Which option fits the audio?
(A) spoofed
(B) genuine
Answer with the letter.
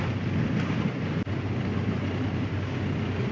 B